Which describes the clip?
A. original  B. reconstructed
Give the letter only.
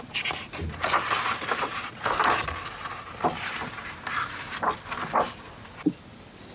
A